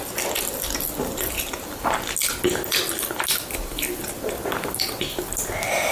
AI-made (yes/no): no